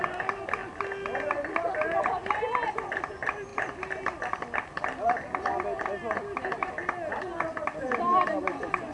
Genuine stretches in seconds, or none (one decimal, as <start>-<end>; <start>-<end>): 0.0-8.9